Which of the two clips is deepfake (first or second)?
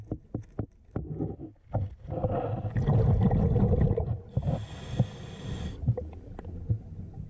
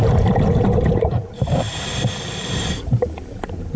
second